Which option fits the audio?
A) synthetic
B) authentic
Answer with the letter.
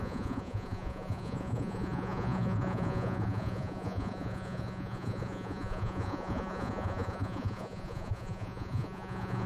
A